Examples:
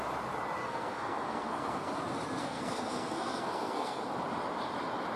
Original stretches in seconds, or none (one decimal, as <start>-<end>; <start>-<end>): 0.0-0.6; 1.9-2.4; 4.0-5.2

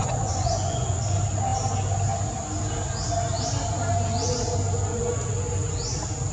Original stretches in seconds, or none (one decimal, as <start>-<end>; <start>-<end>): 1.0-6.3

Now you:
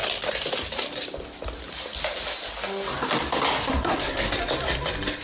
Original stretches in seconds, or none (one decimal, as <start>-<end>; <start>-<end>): 0.0-3.6; 4.3-5.2